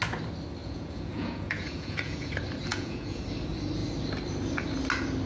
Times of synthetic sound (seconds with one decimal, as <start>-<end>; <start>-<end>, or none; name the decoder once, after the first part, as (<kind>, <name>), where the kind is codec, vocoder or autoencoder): 0.6-2.3 (vocoder, Vocos); 2.7-3.2